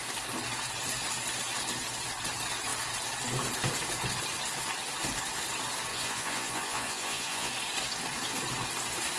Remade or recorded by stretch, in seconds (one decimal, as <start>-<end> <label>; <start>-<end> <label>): 0.0-5.9 recorded; 5.9-7.5 remade; 7.5-9.2 recorded